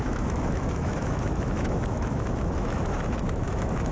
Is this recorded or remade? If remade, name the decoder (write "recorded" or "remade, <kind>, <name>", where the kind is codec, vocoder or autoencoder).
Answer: remade, autoencoder, DAC-VAE